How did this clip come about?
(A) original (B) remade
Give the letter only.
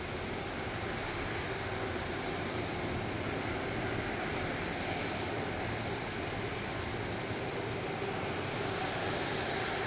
A